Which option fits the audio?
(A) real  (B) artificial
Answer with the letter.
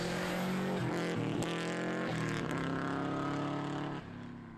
A